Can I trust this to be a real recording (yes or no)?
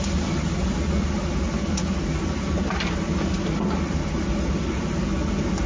yes